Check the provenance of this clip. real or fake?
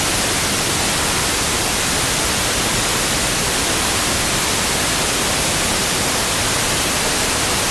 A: fake